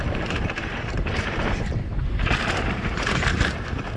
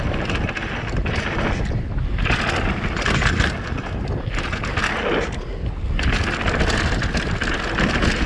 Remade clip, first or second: first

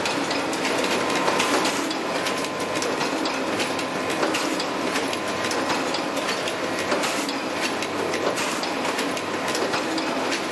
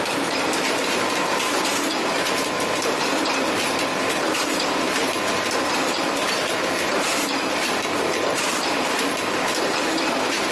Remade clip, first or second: second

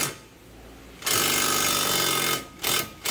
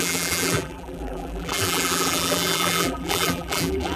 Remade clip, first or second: second